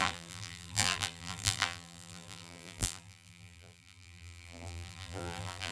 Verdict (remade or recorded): remade